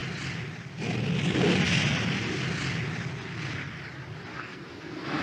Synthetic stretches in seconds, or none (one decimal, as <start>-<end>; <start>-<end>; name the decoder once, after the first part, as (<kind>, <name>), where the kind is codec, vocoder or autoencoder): 4.3-5.2 (codec, SNAC)